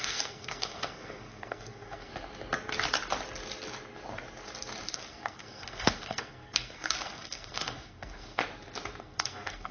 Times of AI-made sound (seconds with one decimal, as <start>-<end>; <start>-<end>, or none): 0.0-2.1; 4.9-8.4; 9.0-9.7